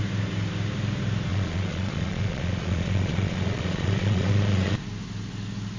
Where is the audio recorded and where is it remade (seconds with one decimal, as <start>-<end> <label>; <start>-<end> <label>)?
0.0-1.3 recorded; 1.3-4.8 remade; 4.8-5.8 recorded